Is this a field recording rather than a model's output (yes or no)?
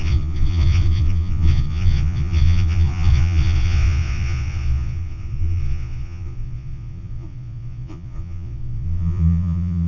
no